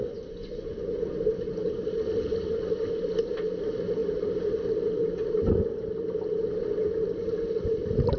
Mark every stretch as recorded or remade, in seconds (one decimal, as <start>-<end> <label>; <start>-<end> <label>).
0.0-0.4 recorded; 0.4-1.1 remade; 1.1-8.2 recorded